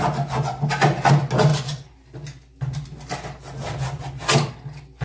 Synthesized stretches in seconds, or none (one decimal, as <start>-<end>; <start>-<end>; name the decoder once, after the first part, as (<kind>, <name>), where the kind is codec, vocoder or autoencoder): none